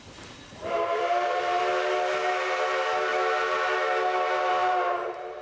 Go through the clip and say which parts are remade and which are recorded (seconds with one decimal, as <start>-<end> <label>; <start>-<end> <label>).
0.0-0.6 recorded; 0.6-1.6 remade; 1.6-5.4 recorded

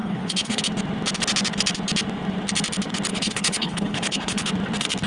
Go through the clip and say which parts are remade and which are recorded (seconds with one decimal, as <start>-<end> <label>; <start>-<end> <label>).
0.0-0.6 remade; 0.6-3.1 recorded; 3.1-4.5 remade; 4.5-5.1 recorded

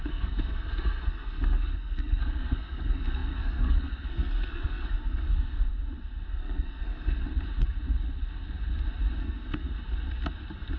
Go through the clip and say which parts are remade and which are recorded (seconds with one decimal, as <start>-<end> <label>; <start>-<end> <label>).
0.0-5.7 remade; 5.7-6.3 recorded; 6.3-7.2 remade; 7.2-9.2 recorded; 9.2-9.7 remade; 9.7-10.8 recorded

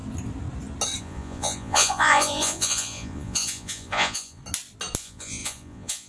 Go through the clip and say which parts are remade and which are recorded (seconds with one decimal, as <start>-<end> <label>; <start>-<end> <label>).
0.0-1.0 recorded; 1.0-4.4 remade; 4.4-5.0 recorded; 5.0-6.1 remade

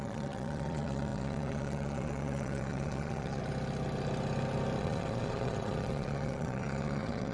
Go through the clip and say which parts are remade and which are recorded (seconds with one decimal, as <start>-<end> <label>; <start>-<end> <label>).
0.0-3.4 remade; 3.4-4.8 recorded; 4.8-7.3 remade